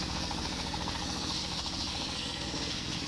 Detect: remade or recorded remade